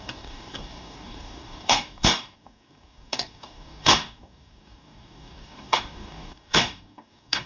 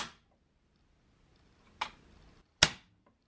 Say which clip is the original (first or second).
second